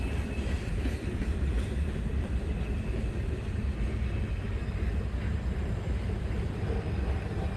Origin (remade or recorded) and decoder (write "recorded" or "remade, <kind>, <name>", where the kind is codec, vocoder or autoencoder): recorded